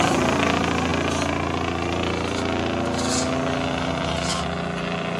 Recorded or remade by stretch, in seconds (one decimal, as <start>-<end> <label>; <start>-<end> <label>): 0.0-5.2 recorded